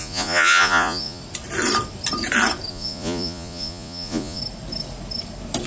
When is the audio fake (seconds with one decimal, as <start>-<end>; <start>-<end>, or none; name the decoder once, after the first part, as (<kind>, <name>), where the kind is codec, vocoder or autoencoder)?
0.0-1.2 (vocoder, Vocos); 2.7-4.4